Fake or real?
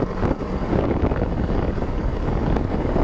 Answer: fake